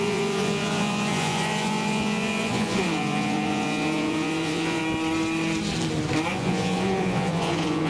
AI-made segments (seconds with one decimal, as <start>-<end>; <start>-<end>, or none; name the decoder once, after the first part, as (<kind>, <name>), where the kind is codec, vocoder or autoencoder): 0.0-4.8 (vocoder, Vocos); 6.3-7.9